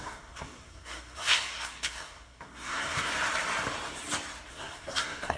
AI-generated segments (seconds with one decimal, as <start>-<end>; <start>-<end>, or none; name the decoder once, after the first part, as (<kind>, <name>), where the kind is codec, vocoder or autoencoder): 0.0-3.1 (codec, SNAC); 4.5-5.4